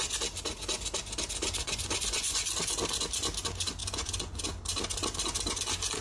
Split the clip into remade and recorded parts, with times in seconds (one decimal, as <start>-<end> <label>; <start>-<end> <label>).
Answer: 0.0-1.6 recorded; 1.6-2.5 remade; 2.5-3.8 recorded; 3.8-4.4 remade; 4.4-6.0 recorded